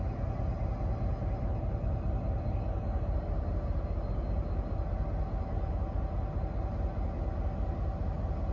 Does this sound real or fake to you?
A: real